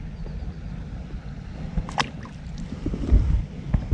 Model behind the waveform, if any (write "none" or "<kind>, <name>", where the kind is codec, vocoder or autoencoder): none